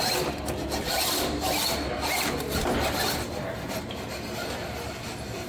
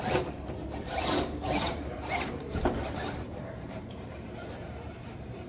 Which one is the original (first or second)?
first